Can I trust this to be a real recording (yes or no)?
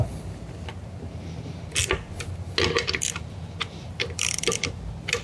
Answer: yes